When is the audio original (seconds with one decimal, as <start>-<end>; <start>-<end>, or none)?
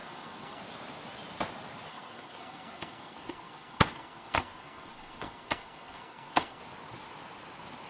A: 0.6-1.9; 6.6-7.9